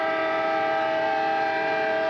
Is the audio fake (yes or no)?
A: no